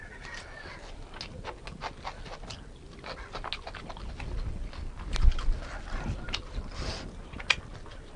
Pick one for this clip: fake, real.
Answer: real